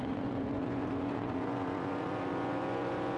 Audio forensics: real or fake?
fake